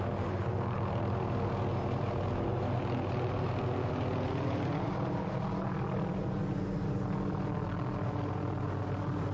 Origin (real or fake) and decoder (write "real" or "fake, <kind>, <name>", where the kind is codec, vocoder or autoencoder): real